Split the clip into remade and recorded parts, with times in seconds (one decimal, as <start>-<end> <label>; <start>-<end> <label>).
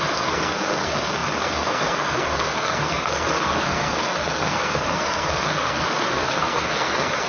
0.0-7.3 remade